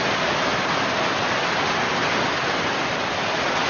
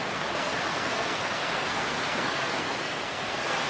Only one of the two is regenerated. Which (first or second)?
second